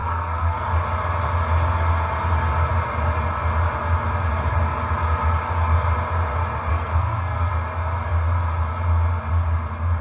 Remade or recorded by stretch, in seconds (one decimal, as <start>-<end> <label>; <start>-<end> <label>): 0.0-0.7 remade; 0.7-6.7 recorded; 6.7-7.5 remade; 7.5-10.0 recorded